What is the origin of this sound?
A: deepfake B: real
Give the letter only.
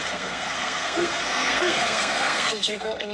A